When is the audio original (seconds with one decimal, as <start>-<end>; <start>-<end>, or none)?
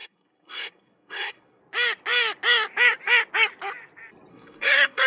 1.6-4.3